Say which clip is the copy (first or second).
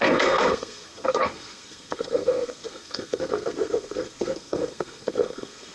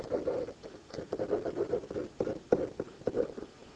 first